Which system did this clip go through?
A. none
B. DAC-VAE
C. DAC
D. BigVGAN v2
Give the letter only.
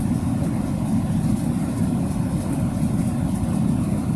A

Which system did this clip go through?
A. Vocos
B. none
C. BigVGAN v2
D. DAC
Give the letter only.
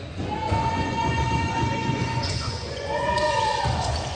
A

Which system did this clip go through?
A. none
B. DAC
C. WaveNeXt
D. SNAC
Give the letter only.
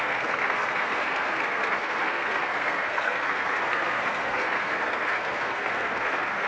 D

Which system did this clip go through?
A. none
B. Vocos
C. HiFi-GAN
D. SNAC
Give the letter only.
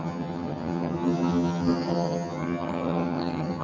C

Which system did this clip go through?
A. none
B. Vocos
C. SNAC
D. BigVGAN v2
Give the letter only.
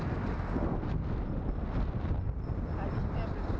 A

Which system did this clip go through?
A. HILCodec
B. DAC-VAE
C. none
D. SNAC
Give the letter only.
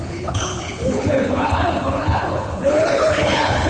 A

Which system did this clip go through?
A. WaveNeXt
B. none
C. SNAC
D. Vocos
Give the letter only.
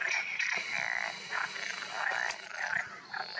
B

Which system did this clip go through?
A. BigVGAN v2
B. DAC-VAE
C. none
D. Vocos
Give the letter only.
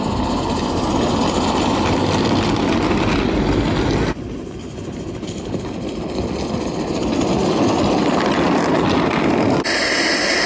C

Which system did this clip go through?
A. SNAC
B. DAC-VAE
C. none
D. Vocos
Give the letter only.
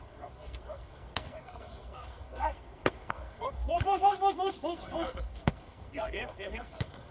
A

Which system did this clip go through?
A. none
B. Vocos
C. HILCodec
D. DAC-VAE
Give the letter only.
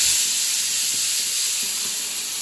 A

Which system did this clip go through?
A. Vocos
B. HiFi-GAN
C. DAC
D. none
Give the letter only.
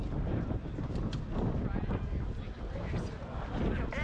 D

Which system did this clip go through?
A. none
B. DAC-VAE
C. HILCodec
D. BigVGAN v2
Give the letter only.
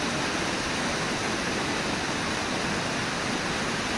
A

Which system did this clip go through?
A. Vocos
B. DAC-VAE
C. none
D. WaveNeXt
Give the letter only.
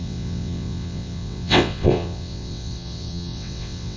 D